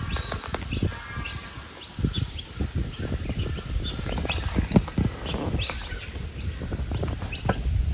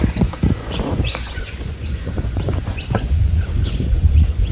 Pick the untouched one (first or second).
first